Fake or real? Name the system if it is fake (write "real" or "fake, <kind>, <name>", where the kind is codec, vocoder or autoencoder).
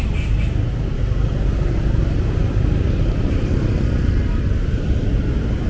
real